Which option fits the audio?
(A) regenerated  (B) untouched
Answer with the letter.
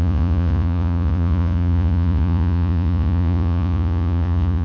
A